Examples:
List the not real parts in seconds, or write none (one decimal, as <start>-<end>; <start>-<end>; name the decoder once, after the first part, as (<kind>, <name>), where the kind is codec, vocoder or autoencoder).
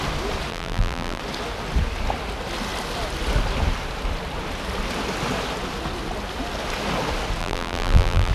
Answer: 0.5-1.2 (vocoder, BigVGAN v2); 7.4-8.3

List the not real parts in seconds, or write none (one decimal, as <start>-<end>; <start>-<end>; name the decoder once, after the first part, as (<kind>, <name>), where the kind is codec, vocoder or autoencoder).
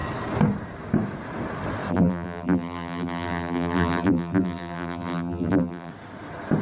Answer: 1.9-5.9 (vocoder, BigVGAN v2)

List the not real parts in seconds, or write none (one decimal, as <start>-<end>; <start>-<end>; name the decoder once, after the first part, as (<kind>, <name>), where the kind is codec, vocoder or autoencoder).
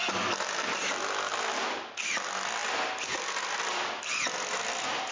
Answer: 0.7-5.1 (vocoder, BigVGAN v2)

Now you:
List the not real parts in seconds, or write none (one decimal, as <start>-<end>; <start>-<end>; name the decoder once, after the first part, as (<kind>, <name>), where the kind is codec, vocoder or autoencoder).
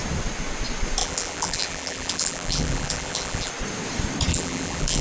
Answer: 1.0-3.5 (vocoder, BigVGAN v2); 4.3-5.0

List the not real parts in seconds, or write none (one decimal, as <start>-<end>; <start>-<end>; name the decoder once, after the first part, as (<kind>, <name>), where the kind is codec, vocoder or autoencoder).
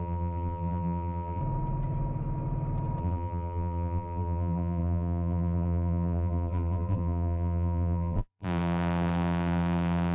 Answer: 0.0-1.4 (vocoder, BigVGAN v2); 3.0-10.1